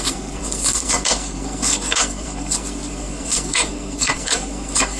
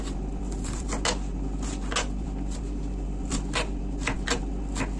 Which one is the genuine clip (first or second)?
second